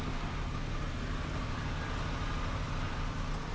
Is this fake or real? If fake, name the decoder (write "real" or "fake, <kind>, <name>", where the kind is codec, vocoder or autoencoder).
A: real